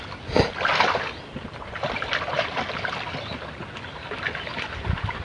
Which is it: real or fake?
real